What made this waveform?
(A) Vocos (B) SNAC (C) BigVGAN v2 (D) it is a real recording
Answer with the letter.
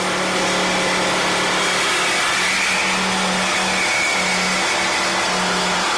D